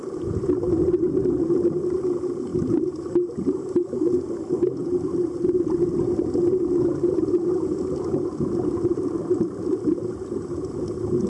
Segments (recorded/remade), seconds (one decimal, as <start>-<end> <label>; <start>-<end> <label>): 0.0-11.3 recorded